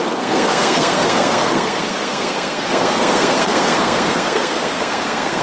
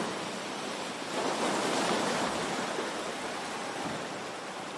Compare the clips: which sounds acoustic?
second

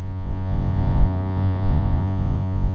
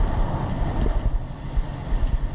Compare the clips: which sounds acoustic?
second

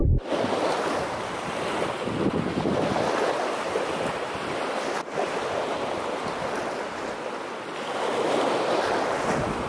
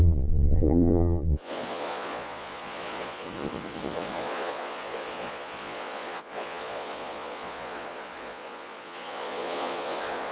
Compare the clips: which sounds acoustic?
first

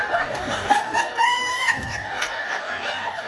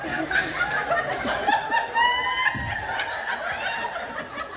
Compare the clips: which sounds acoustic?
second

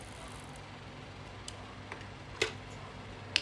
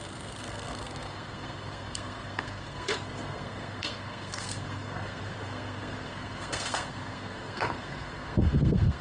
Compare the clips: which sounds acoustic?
first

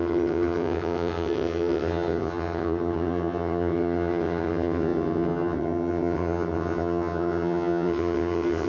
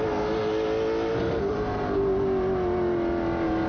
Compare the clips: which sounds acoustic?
second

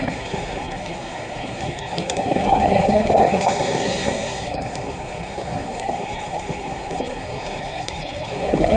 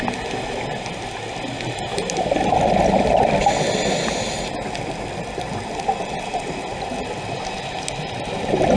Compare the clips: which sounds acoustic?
second